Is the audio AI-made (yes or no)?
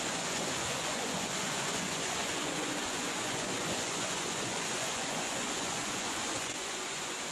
yes